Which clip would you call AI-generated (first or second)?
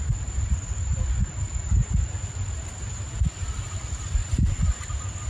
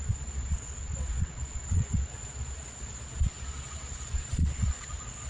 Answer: second